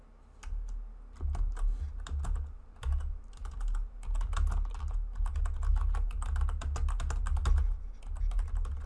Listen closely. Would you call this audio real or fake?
real